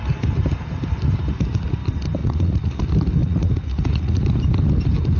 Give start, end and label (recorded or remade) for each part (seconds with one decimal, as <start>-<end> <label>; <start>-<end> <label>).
0.0-2.2 recorded; 2.2-2.8 remade; 2.8-3.2 recorded; 3.2-4.4 remade; 4.4-5.2 recorded